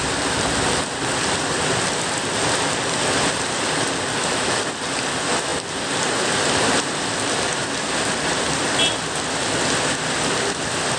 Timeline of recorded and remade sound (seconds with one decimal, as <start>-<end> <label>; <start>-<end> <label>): 0.0-11.0 recorded